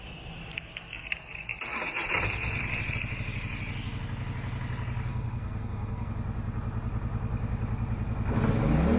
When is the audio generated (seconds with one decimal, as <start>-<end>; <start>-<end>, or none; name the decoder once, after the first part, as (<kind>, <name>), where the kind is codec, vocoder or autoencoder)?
5.1-6.1 (codec, SNAC)